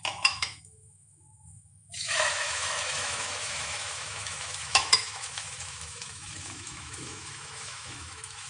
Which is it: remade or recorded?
remade